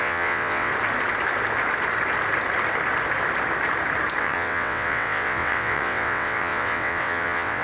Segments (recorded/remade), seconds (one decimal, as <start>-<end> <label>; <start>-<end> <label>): 0.0-0.7 remade; 0.7-4.2 recorded; 4.2-7.6 remade